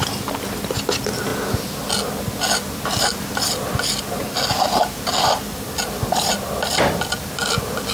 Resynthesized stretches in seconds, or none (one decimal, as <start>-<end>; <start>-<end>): none